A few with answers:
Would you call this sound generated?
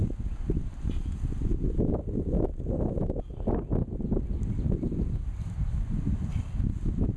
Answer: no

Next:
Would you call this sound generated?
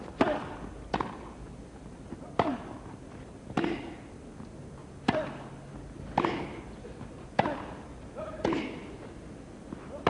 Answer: no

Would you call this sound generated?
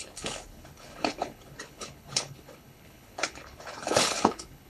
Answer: yes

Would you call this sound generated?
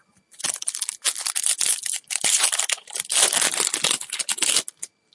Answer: no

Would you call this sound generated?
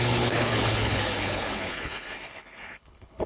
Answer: yes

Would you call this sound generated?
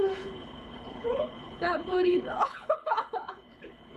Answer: yes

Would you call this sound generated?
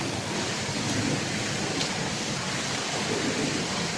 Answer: no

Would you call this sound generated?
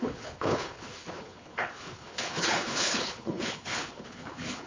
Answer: yes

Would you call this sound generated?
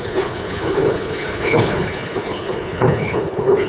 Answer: yes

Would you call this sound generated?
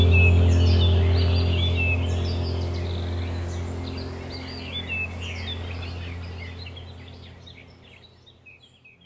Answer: no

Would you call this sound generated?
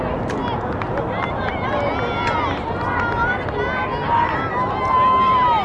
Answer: no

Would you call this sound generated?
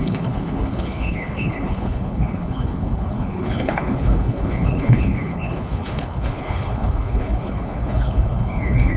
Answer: yes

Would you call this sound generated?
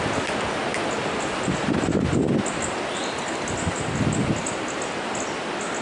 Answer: no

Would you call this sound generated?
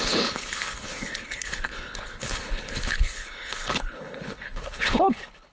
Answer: yes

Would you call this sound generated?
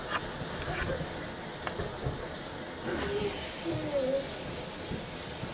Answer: no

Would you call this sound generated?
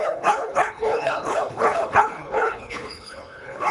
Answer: yes